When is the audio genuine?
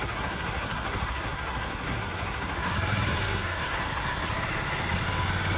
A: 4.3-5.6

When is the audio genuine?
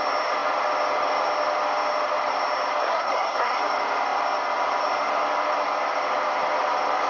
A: 0.0-2.8; 3.6-7.1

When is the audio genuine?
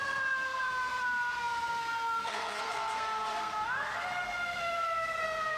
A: none